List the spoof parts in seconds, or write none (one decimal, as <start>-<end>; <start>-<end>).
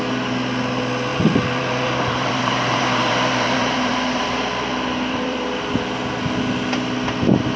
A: 1.1-5.7